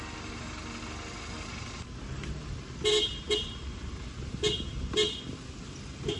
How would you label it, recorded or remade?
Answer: recorded